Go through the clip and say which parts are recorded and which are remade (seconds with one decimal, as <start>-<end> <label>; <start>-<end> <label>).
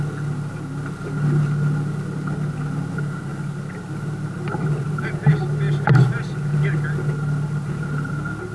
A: 0.0-8.5 recorded